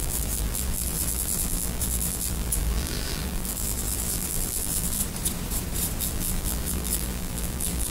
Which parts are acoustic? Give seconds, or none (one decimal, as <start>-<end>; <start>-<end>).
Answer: 5.0-6.0